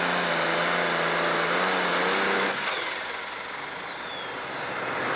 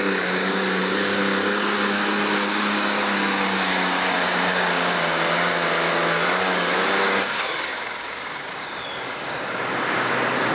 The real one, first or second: first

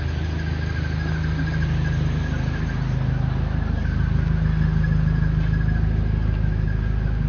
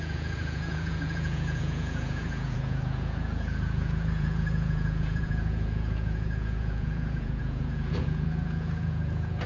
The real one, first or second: first